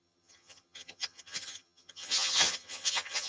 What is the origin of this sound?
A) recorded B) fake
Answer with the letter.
B